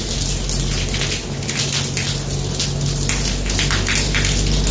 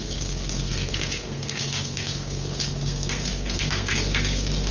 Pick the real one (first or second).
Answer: first